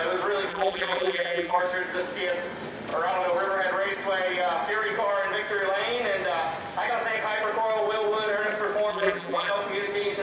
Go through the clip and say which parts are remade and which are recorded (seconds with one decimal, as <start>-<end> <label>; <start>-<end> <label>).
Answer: 0.0-0.5 recorded; 0.5-1.6 remade; 1.6-8.9 recorded; 8.9-9.5 remade; 9.5-10.2 recorded